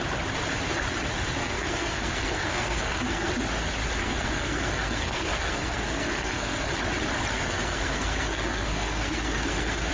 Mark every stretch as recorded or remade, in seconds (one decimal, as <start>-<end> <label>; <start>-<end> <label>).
0.0-1.4 recorded; 1.4-3.3 remade; 3.3-4.0 recorded; 4.0-6.7 remade; 6.7-7.3 recorded; 7.3-9.9 remade